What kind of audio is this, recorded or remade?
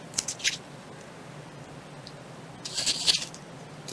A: recorded